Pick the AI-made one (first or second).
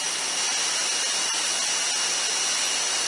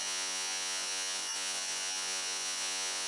second